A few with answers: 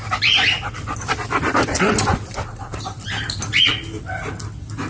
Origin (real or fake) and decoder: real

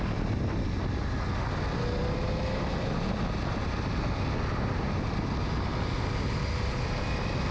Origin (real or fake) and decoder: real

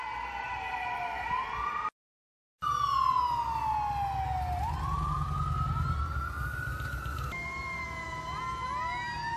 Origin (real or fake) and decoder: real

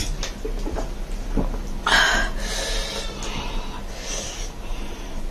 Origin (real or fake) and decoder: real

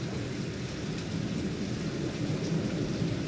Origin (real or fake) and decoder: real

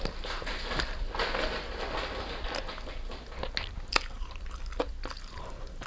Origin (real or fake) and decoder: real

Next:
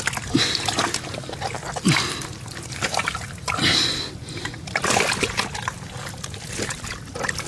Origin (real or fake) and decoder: real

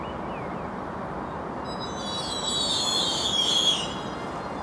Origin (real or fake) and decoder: real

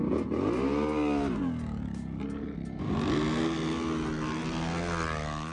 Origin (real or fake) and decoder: real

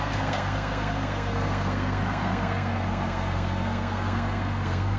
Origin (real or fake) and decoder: fake, codec, SNAC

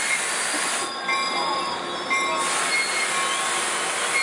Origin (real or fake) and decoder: real